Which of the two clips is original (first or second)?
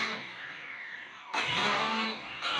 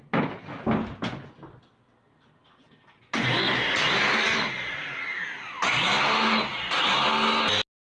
second